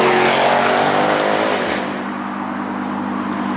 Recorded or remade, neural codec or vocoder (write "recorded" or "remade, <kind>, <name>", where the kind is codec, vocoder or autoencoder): recorded